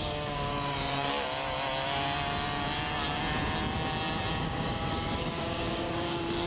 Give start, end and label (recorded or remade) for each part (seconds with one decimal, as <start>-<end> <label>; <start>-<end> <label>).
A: 0.0-0.5 remade; 0.5-4.4 recorded; 4.4-6.5 remade